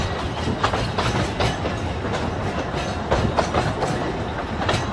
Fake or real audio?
real